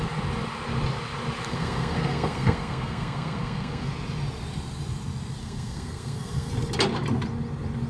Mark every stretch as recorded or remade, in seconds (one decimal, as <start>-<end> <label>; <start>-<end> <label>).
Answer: 0.0-1.5 recorded; 1.5-3.9 remade; 3.9-5.4 recorded; 5.4-6.5 remade; 6.5-7.9 recorded